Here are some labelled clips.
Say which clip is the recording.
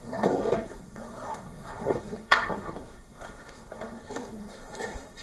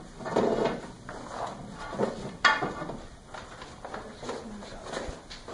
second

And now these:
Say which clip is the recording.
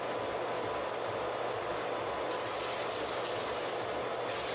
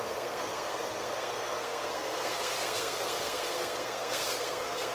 first